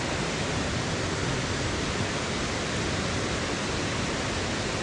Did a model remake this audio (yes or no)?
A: no